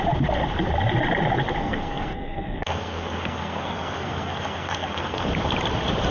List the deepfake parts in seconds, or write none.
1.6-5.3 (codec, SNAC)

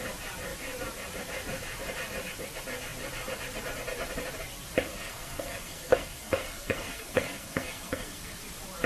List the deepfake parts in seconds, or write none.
4.9-8.4 (codec, SNAC)